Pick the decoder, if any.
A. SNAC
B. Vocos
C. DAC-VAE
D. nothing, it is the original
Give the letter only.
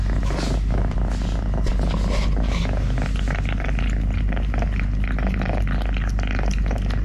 D